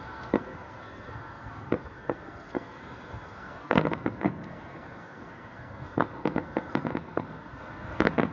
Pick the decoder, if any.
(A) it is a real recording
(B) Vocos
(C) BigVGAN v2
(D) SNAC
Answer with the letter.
D